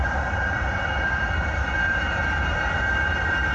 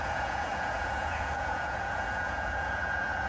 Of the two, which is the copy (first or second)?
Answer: second